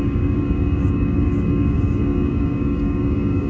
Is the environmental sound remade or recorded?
remade